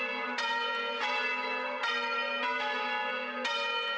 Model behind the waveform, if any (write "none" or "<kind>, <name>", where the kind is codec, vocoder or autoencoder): none